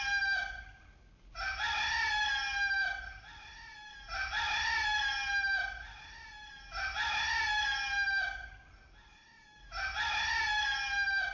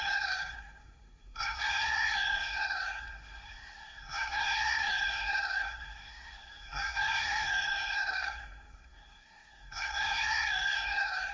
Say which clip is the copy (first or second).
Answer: second